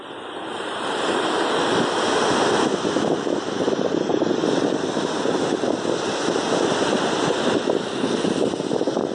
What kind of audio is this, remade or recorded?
recorded